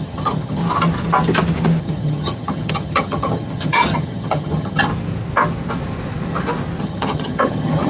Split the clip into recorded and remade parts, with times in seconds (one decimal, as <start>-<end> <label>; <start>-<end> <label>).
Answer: 0.0-0.6 remade; 0.6-1.8 recorded; 1.8-4.9 remade; 4.9-6.8 recorded; 6.8-7.9 remade